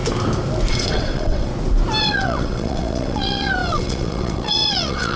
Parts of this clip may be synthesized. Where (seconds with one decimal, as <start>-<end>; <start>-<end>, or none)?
0.7-1.5; 2.0-5.2